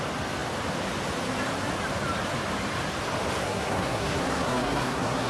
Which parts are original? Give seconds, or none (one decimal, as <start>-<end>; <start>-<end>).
0.0-3.4